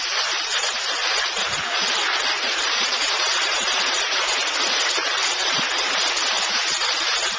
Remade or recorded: remade